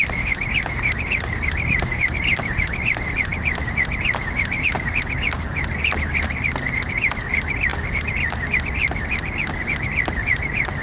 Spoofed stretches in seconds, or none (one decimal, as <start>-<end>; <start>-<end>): none